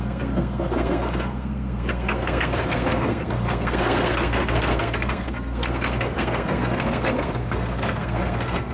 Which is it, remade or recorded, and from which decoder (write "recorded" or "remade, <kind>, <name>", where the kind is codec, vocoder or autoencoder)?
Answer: remade, codec, SNAC